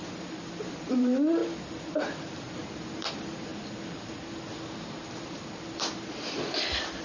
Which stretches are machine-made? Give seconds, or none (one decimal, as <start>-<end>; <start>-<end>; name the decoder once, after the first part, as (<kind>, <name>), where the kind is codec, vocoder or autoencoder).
0.0-1.4 (vocoder, BigVGAN v2); 2.0-3.5; 5.1-7.0